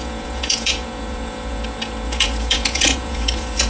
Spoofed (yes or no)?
yes